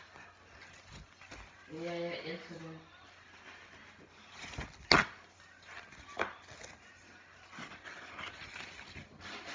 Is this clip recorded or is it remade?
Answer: recorded